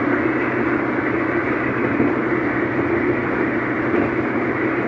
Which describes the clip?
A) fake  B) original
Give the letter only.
B